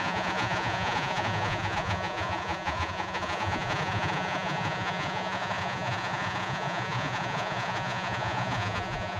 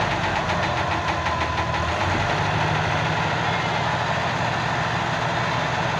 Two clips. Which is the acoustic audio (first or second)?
second